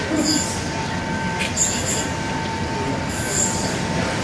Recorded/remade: recorded